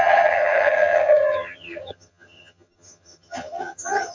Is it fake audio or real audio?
fake